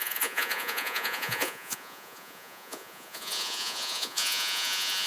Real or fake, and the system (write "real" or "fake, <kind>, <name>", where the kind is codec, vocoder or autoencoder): fake, vocoder, Vocos